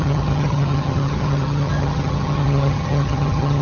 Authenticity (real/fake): fake